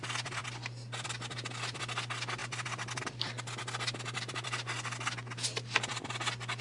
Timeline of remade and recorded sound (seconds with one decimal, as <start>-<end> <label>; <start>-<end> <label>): 0.0-6.6 recorded